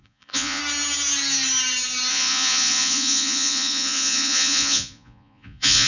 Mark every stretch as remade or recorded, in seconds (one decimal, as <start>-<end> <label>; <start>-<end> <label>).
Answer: 0.0-0.6 remade; 0.6-2.1 recorded; 2.1-5.9 remade